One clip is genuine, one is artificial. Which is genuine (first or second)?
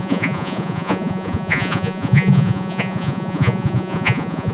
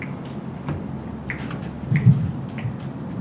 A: second